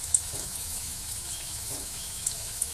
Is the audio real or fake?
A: fake